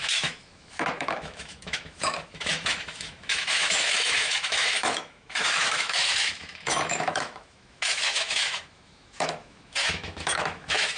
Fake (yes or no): yes